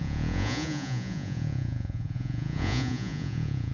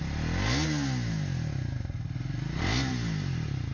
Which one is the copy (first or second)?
first